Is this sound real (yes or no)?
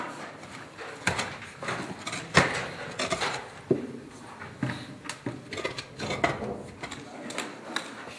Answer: yes